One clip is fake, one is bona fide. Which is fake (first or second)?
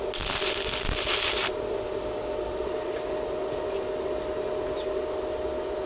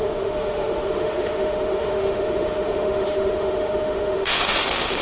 second